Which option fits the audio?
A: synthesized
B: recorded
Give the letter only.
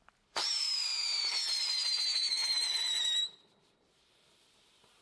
A